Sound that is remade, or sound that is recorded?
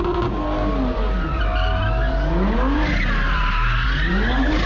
recorded